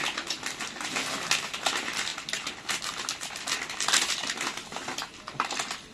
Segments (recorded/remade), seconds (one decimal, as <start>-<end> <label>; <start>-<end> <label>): 0.0-5.9 recorded